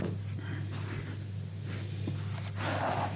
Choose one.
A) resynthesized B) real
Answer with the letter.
B